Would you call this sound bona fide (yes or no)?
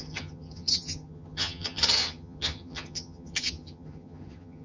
no